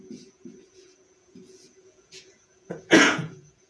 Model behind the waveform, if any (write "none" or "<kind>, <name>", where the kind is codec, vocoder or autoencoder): vocoder, Vocos